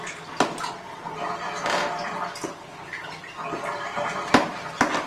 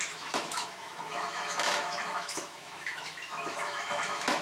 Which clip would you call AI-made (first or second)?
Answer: second